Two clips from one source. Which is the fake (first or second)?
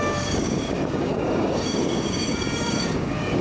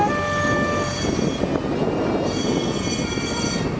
first